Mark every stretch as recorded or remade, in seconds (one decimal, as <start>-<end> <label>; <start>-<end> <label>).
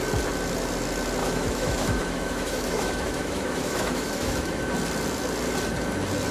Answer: 0.0-1.2 recorded; 1.2-4.6 remade; 4.6-6.3 recorded